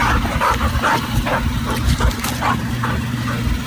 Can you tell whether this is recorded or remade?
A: recorded